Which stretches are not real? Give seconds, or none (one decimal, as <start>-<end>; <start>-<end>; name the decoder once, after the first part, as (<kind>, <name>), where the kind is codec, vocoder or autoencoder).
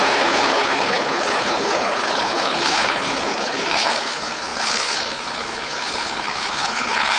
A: 0.0-7.2 (codec, HILCodec)